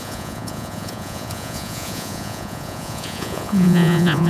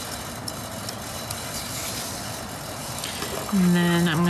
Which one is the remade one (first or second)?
first